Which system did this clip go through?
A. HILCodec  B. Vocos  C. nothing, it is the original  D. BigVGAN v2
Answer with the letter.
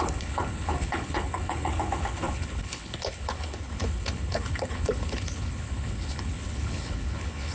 A